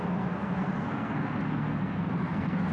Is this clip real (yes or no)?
no